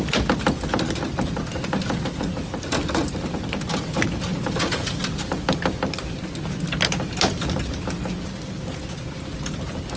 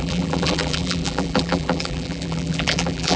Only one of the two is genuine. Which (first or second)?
first